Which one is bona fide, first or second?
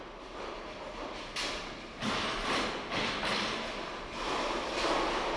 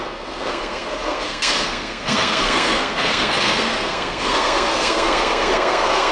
first